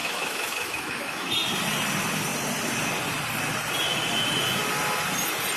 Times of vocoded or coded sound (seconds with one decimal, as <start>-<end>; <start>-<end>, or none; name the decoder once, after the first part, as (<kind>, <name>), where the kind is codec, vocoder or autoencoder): 0.0-1.3 (autoencoder, DAC-VAE)